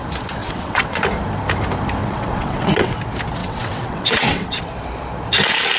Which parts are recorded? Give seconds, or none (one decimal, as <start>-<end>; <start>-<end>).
0.0-0.4; 1.0-2.0; 3.0-3.4; 4.6-5.8